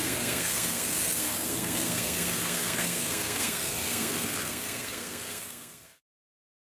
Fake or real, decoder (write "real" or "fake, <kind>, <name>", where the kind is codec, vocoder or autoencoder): fake, codec, SNAC